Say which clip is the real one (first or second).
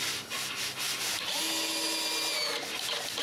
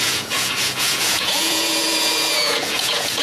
first